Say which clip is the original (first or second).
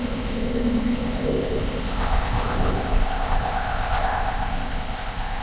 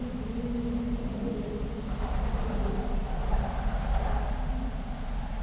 second